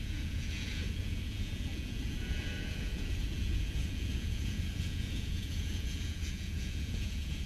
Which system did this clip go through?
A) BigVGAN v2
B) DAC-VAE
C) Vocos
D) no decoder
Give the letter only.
C